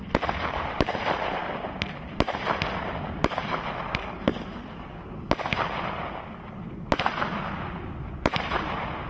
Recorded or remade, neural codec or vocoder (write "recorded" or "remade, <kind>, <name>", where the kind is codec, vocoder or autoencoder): recorded